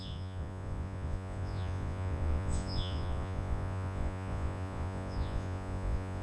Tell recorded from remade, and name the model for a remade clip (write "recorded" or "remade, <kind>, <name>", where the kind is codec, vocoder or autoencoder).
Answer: remade, vocoder, Vocos